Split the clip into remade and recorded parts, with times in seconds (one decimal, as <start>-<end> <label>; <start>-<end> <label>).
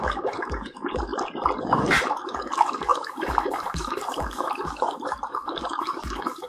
0.0-1.1 remade; 1.1-1.6 recorded; 1.6-6.5 remade